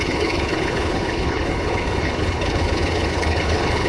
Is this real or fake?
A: fake